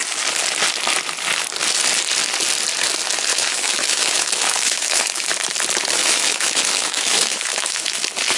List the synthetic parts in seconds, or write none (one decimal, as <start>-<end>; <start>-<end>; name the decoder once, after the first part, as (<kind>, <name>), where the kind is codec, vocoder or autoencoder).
3.3-5.3 (autoencoder, DAC-VAE); 6.0-8.0